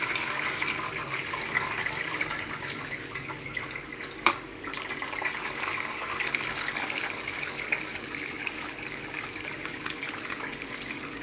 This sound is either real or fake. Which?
fake